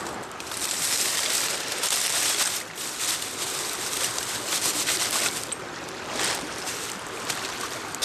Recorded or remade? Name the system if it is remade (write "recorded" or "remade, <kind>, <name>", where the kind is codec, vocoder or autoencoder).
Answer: remade, vocoder, BigVGAN v2